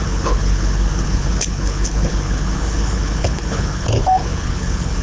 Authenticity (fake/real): fake